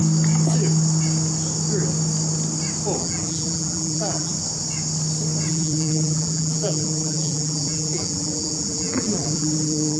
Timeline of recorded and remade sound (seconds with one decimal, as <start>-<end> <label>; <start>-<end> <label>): 0.0-3.0 recorded; 3.0-4.3 remade; 4.3-5.5 recorded; 5.5-10.0 remade